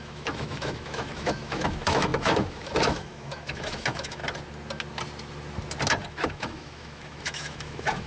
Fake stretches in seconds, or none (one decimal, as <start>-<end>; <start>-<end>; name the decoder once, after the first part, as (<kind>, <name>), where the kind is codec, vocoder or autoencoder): 0.0-4.2 (autoencoder, DAC-VAE); 6.1-8.1